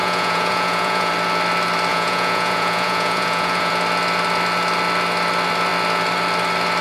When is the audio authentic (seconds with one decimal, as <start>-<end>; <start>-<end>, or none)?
1.1-1.9; 3.7-6.8